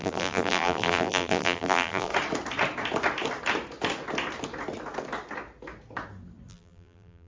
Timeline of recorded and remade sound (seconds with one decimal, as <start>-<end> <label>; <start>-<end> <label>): 0.0-2.1 remade; 2.1-6.5 recorded; 6.5-7.3 remade